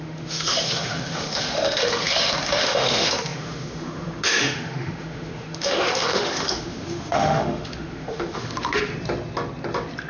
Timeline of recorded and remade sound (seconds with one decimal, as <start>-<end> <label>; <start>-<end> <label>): 0.0-8.9 remade; 8.9-10.1 recorded